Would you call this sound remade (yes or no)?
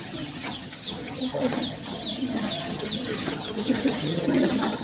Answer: yes